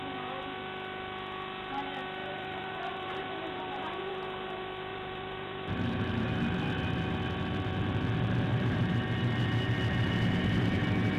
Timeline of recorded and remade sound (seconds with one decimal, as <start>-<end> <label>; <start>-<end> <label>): 0.0-2.2 recorded; 2.2-3.8 remade; 3.8-4.9 recorded; 4.9-6.4 remade; 6.4-8.5 recorded; 8.5-11.2 remade